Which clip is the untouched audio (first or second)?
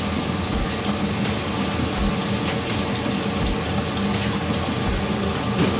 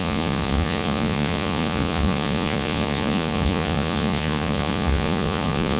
first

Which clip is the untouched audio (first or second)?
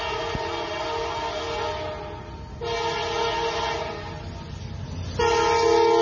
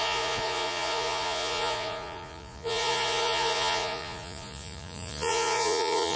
first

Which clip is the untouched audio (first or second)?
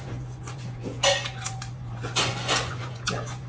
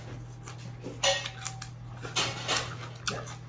second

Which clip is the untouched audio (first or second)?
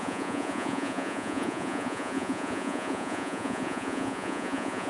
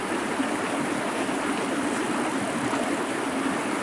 second